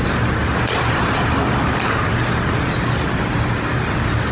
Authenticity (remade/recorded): recorded